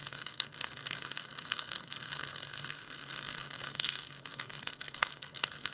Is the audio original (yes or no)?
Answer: no